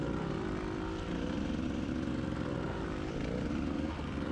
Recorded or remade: remade